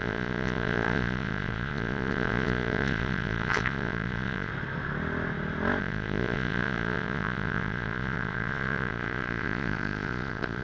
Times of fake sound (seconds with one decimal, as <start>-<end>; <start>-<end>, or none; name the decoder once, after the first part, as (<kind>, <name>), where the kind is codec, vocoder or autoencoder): 0.0-4.5 (vocoder, Vocos); 5.8-10.6